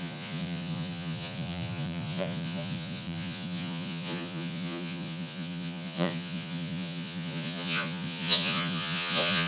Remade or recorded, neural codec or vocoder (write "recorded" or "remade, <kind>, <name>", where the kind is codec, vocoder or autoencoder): remade, vocoder, Vocos